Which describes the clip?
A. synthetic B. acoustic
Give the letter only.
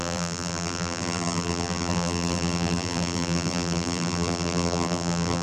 A